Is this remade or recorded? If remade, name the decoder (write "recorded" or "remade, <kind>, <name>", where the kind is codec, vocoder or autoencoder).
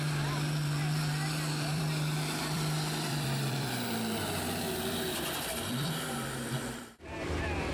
remade, vocoder, BigVGAN v2